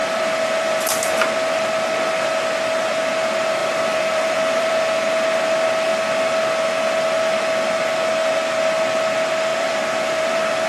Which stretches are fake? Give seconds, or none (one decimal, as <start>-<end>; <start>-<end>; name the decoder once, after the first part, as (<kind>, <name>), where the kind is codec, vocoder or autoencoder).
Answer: 0.0-1.2 (vocoder, BigVGAN v2); 3.6-4.7; 9.5-10.7